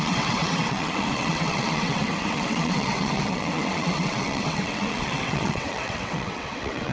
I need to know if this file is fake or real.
fake